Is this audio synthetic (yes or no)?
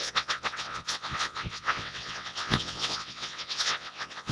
yes